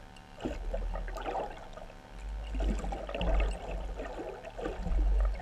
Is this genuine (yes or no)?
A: yes